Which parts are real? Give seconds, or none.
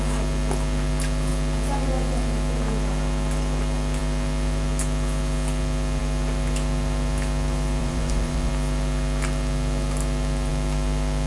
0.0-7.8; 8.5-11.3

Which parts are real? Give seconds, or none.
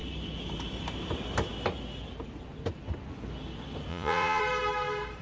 0.0-3.9; 4.4-5.2